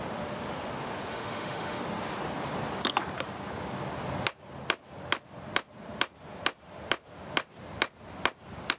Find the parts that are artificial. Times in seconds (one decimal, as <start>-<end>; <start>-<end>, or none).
1.1-1.8